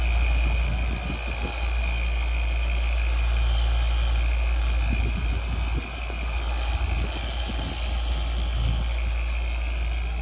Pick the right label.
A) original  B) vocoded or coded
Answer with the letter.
A